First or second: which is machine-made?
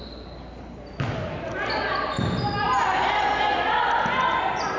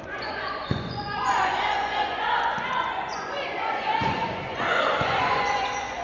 second